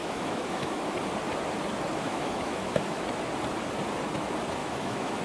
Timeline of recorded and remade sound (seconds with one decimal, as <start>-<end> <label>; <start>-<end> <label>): 0.0-0.8 remade; 0.8-1.9 recorded; 1.9-3.0 remade; 3.0-4.6 recorded; 4.6-5.2 remade